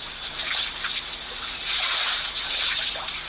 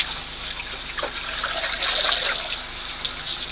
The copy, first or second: first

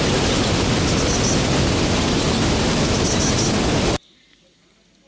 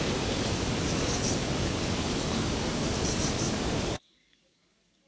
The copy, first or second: second